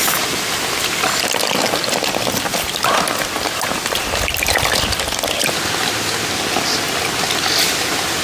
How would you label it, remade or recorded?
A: recorded